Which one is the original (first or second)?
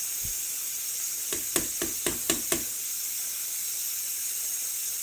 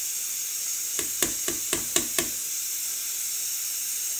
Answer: second